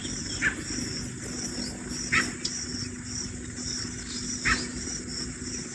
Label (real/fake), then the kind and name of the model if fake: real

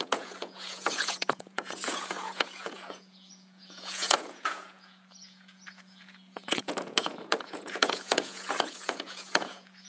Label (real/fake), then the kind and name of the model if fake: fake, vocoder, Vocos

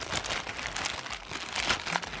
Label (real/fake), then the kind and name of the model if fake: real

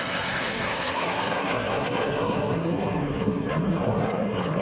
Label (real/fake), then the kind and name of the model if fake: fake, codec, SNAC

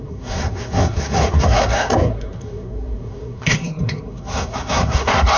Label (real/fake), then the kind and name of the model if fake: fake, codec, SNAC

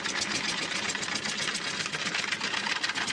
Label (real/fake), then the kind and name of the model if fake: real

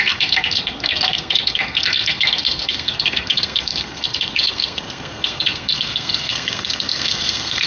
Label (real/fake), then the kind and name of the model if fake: fake, codec, SNAC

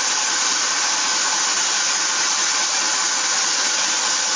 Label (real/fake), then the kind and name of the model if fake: real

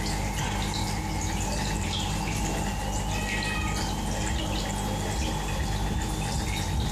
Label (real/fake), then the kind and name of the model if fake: real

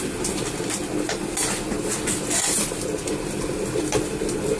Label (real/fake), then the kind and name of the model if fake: real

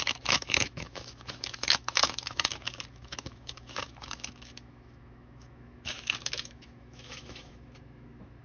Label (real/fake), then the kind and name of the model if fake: fake, autoencoder, DAC-VAE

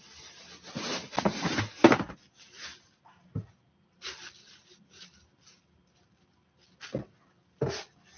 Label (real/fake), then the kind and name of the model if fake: real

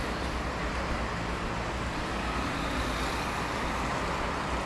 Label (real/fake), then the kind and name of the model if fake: real